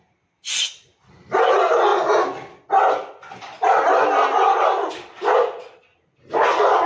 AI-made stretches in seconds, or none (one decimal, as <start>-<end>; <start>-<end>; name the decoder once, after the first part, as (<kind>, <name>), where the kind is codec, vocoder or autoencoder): none